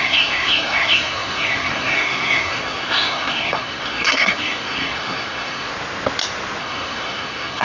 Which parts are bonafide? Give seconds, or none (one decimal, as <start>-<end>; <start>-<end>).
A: 5.7-6.6